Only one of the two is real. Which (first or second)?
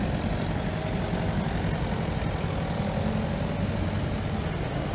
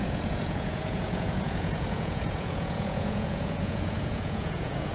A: first